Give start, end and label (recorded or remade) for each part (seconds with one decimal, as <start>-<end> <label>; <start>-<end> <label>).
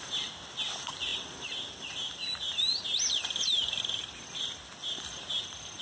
0.0-5.8 recorded